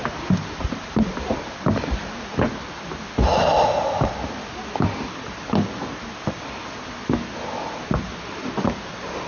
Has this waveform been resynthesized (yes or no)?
no